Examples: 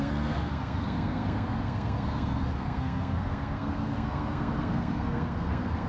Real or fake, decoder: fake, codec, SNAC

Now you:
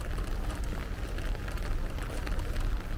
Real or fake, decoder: real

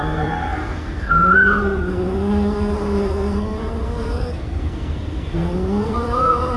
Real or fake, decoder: fake, codec, SNAC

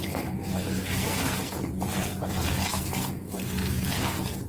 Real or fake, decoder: fake, codec, SNAC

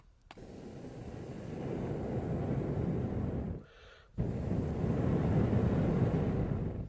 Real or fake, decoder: real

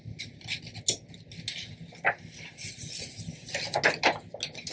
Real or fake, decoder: real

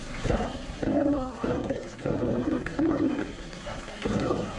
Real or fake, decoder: fake, codec, SNAC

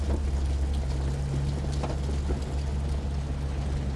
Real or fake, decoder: real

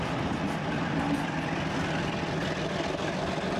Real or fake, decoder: real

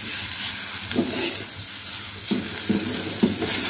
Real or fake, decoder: real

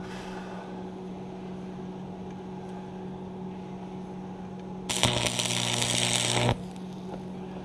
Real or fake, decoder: real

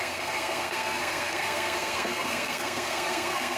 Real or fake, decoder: fake, codec, SNAC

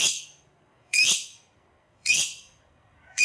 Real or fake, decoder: fake, codec, SNAC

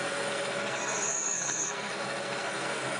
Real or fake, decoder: fake, codec, SNAC